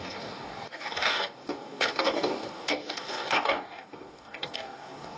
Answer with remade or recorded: remade